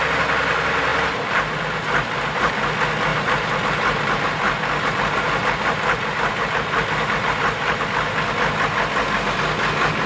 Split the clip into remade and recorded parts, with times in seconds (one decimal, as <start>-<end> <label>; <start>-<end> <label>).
0.0-0.9 recorded; 0.9-2.5 remade; 2.5-3.1 recorded; 3.1-7.8 remade; 7.8-10.1 recorded